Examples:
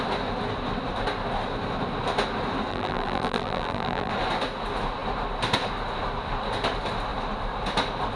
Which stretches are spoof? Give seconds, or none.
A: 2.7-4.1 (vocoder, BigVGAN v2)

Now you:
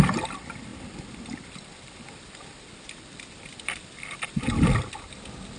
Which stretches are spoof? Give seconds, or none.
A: 0.0-5.6 (vocoder, BigVGAN v2)

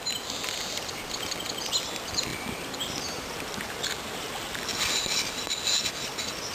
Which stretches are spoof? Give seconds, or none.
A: 2.3-5.5 (vocoder, BigVGAN v2)

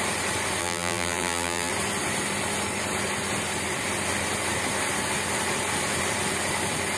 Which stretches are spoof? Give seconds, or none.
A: 0.6-1.7 (vocoder, BigVGAN v2)

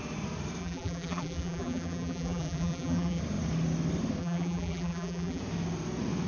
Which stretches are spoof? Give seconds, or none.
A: 0.6-3.2 (vocoder, BigVGAN v2); 4.2-5.4

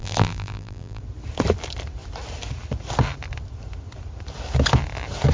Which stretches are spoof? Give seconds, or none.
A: 0.0-1.0 (vocoder, BigVGAN v2)